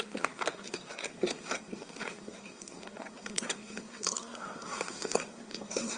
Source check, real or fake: fake